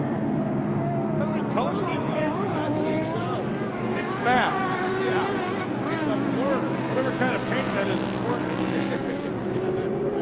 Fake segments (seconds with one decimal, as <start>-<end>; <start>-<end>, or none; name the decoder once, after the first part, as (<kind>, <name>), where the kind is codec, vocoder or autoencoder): 1.9-4.9 (codec, DAC); 9.0-9.6